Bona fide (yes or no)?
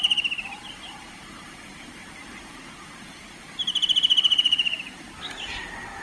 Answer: yes